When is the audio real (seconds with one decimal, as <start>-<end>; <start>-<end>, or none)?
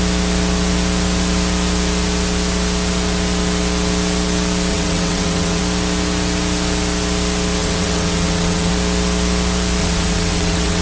0.0-4.7; 5.6-7.6; 8.7-9.8